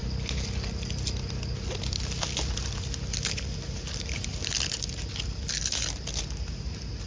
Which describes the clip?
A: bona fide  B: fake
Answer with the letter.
A